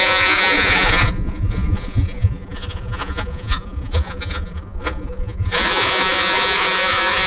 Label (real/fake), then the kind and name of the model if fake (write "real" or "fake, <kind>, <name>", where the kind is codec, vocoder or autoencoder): fake, vocoder, Vocos